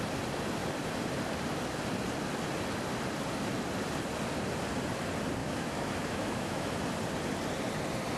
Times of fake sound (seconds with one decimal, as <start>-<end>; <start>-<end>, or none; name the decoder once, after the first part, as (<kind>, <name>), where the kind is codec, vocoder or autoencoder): 5.4-6.7 (autoencoder, DAC-VAE)